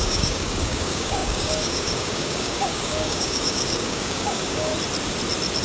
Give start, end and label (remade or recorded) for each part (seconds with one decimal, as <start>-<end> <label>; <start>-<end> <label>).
0.0-4.7 remade; 4.7-5.6 recorded